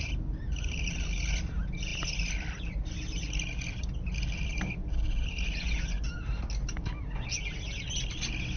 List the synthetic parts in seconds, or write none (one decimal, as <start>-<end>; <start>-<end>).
1.9-4.8

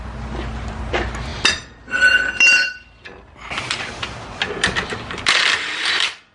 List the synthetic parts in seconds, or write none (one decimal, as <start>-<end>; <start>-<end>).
none